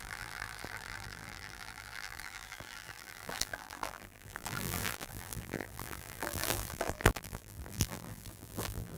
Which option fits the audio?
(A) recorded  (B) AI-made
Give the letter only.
B